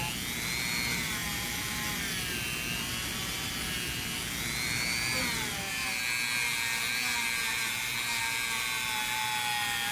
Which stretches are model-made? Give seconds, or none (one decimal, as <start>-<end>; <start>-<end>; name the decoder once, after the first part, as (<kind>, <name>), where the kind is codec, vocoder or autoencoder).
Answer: none